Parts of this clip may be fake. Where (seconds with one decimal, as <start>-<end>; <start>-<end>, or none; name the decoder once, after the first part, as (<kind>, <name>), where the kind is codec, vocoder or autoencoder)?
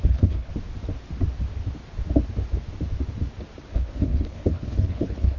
0.0-0.5 (codec, HILCodec); 3.7-5.4